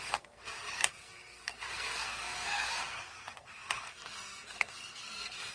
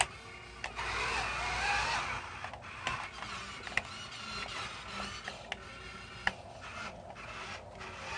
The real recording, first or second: second